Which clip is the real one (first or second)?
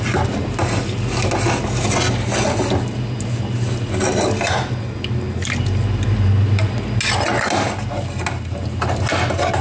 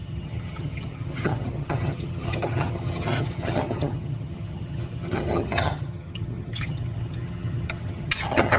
first